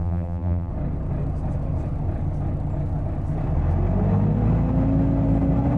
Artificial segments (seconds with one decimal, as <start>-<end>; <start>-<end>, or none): 0.0-0.7